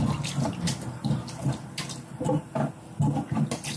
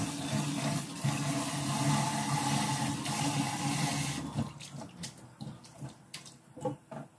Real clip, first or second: second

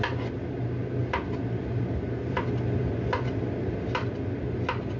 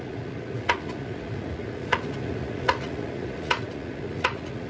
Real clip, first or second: first